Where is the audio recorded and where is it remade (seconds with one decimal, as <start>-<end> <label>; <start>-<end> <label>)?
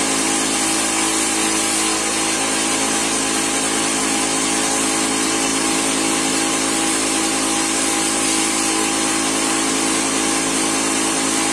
0.0-11.5 recorded